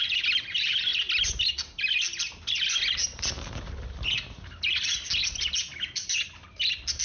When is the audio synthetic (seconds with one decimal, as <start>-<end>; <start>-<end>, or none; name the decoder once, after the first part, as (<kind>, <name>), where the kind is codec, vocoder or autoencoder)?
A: none